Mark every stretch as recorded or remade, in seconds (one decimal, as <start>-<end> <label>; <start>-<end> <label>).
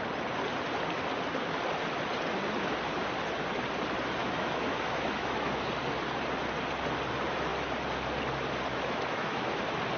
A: 0.0-4.2 recorded; 4.2-5.7 remade; 5.7-8.7 recorded; 8.7-9.6 remade; 9.6-10.0 recorded